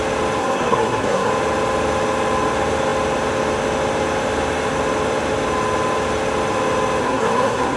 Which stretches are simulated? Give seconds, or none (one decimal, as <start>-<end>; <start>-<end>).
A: 0.4-1.3; 7.0-7.8

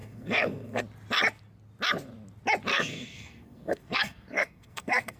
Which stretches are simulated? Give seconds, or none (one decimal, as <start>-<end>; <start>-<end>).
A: 0.0-0.8; 2.7-5.2

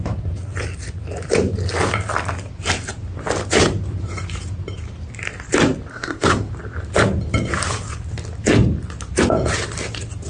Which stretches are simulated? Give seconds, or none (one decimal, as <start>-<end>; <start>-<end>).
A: 5.9-6.5

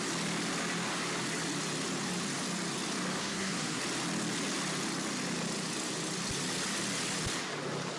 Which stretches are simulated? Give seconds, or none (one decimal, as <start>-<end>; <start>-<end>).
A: 3.2-3.8

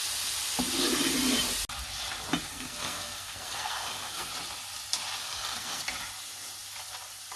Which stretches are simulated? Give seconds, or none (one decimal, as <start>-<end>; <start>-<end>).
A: 2.5-4.3; 5.2-5.8